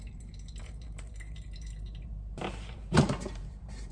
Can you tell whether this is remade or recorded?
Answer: remade